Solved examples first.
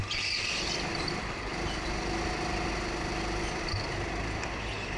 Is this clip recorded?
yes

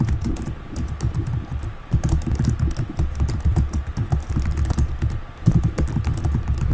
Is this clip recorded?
yes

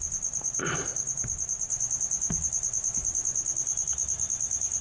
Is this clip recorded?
yes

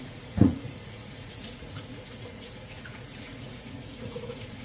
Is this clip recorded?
no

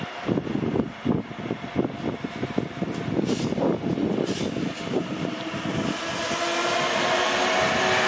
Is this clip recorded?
yes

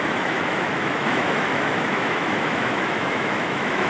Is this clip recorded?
no